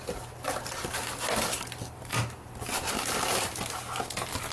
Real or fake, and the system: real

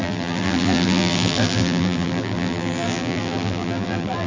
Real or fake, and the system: fake, vocoder, BigVGAN v2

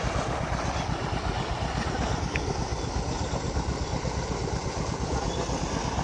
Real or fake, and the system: real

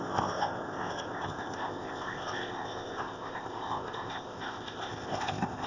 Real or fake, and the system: fake, codec, ZipCodec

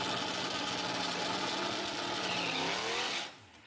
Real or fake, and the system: real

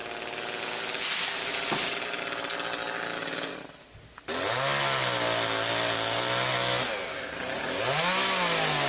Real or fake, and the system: real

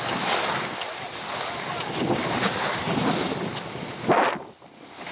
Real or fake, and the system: real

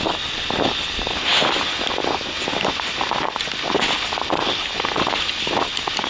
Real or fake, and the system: real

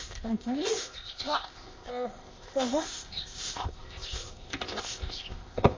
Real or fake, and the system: fake, codec, ZipCodec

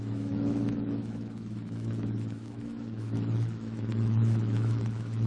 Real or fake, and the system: fake, autoencoder, DAC-VAE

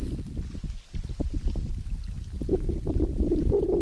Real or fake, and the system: real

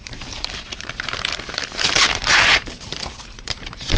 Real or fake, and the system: fake, vocoder, BigVGAN v2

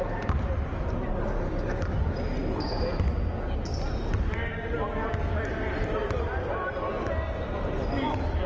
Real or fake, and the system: real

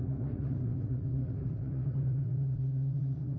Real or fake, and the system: fake, vocoder, Vocos